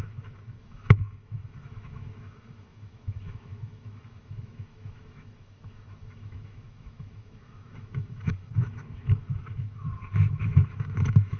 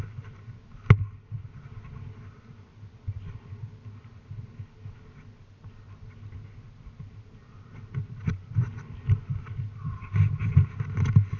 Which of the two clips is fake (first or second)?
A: first